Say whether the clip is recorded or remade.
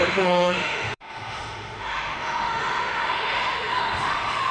remade